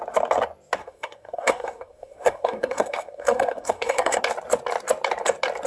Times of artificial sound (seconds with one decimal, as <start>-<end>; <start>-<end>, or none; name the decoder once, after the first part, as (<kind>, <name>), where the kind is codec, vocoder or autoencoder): 0.8-4.2 (codec, SNAC)